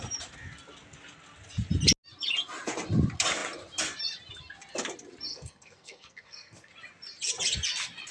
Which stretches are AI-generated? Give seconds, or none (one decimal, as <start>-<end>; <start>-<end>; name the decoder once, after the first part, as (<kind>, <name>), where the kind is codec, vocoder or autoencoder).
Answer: 5.3-6.7 (codec, SNAC)